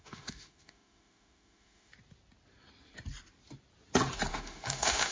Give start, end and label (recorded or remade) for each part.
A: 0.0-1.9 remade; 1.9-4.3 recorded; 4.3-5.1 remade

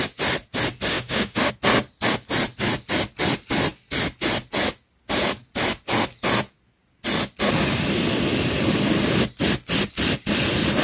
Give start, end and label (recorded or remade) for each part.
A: 0.0-0.9 recorded; 0.9-1.5 remade; 1.5-10.8 recorded

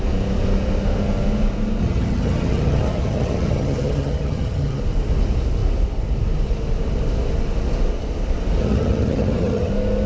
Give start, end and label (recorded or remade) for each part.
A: 0.0-1.8 recorded; 1.8-4.8 remade; 4.8-8.6 recorded; 8.6-9.7 remade; 9.7-10.1 recorded

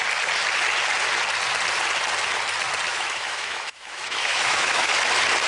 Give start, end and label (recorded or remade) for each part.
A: 0.0-2.9 recorded; 2.9-4.9 remade; 4.9-5.5 recorded

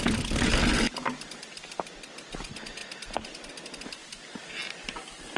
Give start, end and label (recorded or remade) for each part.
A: 0.0-5.4 recorded